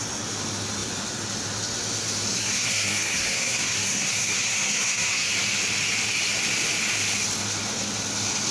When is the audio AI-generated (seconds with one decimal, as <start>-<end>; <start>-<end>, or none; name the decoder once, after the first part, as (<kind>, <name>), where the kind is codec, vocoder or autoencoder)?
2.4-5.3 (codec, SNAC)